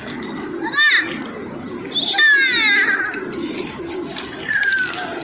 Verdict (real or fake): real